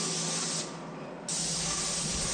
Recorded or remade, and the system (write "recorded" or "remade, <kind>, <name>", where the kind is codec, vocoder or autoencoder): recorded